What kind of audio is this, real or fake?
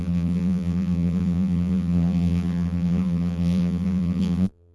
fake